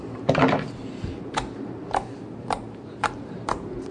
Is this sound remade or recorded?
remade